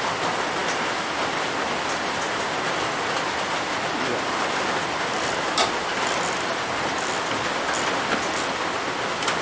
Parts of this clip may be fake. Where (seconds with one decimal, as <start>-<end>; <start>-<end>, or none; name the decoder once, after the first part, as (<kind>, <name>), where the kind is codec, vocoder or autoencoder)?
none